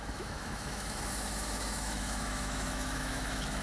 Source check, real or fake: fake